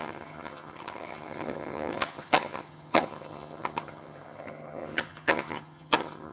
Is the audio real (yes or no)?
no